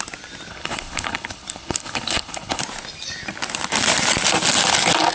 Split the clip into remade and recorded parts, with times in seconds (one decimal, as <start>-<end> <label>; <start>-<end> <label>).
0.0-0.5 recorded; 0.5-2.6 remade; 2.6-5.1 recorded